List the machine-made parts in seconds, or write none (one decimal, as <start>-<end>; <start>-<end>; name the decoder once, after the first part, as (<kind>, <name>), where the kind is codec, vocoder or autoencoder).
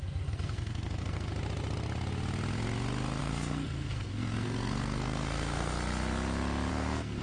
0.0-1.3 (codec, SNAC); 3.2-5.7; 6.7-7.2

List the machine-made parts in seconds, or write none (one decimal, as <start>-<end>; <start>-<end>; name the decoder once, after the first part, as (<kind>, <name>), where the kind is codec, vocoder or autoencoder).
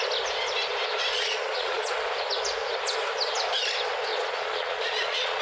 1.1-1.9 (vocoder, Vocos); 4.1-5.4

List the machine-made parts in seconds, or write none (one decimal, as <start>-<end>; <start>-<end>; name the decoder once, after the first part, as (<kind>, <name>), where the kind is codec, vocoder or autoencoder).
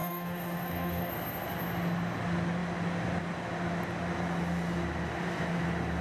0.0-1.1 (autoencoder, DAC-VAE)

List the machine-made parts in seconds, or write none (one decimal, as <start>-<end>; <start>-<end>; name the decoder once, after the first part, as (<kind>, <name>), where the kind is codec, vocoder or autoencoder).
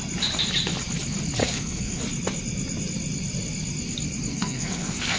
1.4-2.0 (codec, SNAC); 4.3-5.2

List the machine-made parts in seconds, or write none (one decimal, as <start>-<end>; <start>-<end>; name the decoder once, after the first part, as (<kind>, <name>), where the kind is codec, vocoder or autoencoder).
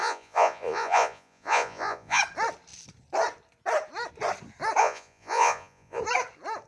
0.0-2.2 (vocoder, Vocos); 4.8-6.0